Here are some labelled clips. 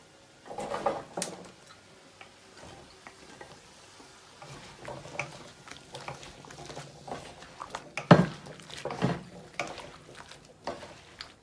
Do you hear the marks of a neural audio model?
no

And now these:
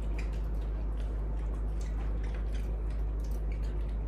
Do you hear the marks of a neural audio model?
no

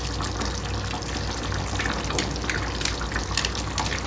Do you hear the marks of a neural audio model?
no